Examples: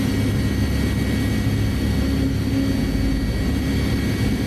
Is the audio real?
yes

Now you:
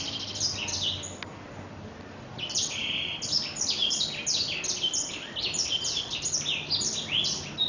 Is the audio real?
yes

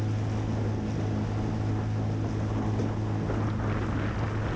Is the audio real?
yes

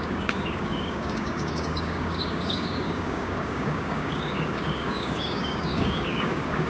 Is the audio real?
no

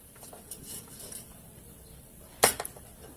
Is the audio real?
no